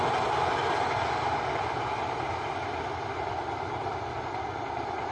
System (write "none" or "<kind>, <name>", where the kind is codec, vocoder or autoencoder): none